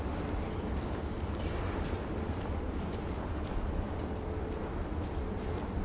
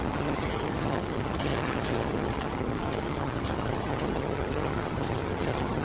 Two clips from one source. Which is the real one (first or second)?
first